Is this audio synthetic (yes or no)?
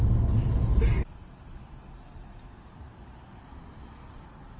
no